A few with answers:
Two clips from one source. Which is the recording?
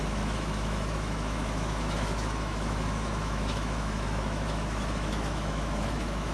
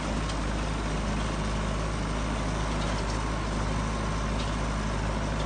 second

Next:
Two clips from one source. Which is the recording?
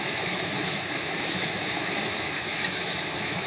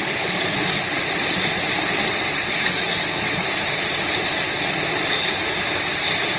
second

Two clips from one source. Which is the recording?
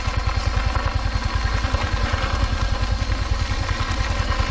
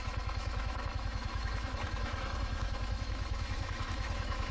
first